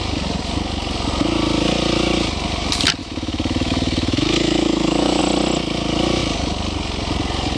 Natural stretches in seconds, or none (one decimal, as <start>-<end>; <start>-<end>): 0.0-3.0; 5.2-7.6